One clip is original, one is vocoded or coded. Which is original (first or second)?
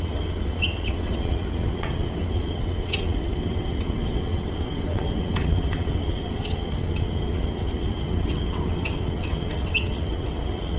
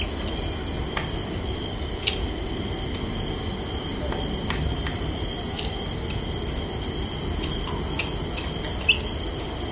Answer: second